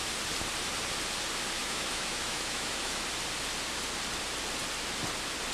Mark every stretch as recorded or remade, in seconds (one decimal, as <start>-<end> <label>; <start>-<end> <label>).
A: 0.0-1.6 recorded; 1.6-3.0 remade; 3.0-5.5 recorded